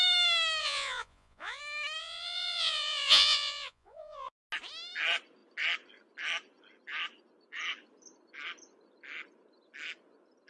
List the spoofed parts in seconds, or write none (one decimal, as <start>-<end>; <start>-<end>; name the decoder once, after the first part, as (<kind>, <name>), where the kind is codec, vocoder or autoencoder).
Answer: 0.6-1.6 (vocoder, Vocos); 2.0-4.4